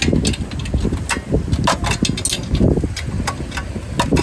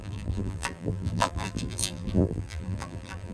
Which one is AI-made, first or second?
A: second